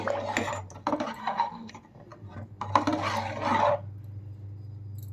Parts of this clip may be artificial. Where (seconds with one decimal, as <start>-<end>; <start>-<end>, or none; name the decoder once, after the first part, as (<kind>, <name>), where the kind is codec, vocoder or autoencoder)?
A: 1.2-1.7 (codec, SNAC)